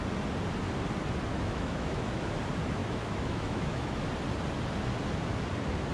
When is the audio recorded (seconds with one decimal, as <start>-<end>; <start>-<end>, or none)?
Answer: 0.0-1.3; 2.4-2.8; 4.1-5.9